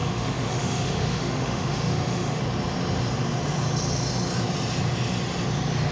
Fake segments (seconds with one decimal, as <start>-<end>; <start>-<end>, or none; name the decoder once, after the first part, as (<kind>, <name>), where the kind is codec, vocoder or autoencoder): 0.0-2.4 (autoencoder, DAC-VAE)

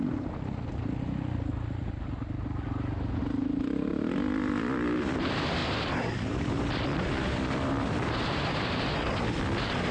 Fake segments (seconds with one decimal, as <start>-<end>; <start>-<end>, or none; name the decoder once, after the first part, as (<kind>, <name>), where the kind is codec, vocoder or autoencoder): 3.9-5.0 (vocoder, BigVGAN v2); 5.6-8.9

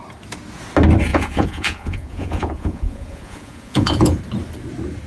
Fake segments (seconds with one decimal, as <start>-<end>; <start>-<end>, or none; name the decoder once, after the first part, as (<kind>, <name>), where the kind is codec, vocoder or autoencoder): 1.1-4.2 (vocoder, Vocos)

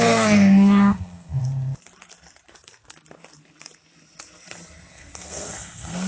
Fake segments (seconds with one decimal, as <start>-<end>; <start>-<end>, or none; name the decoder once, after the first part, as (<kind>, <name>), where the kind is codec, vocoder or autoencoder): 0.0-1.4 (codec, SNAC); 4.9-6.1

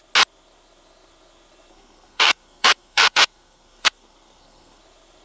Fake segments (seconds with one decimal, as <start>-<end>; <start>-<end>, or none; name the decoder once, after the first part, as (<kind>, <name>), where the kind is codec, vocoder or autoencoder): 1.7-4.8 (codec, SNAC)